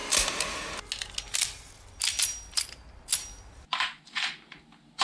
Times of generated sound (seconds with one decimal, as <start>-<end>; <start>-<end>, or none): none